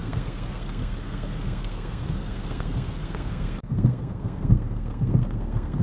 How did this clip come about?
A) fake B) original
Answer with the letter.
A